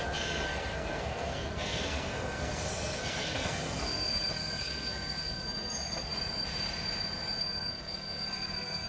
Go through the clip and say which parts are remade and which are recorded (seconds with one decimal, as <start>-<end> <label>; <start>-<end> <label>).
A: 0.0-6.1 remade; 6.1-7.4 recorded; 7.4-8.9 remade